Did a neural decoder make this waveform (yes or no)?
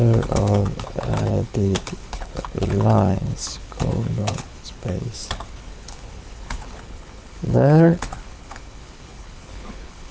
yes